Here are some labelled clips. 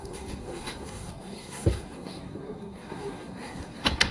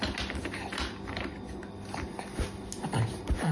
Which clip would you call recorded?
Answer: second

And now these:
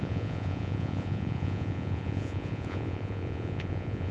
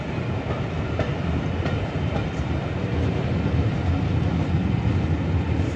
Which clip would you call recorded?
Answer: second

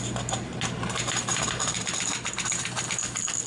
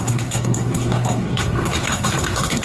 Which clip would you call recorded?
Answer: first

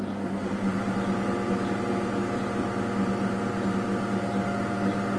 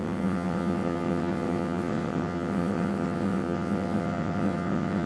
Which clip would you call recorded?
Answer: first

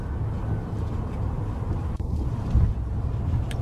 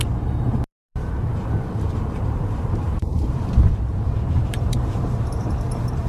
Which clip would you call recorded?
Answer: first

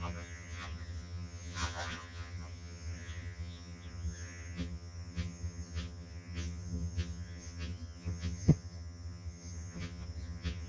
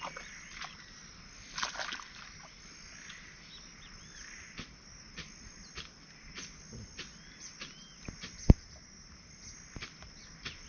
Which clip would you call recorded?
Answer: second